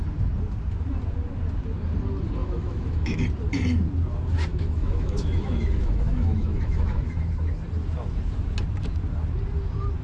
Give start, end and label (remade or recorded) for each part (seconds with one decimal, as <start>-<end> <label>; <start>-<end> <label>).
0.0-2.4 recorded; 2.4-3.2 remade; 3.2-4.5 recorded; 4.5-7.2 remade; 7.2-10.0 recorded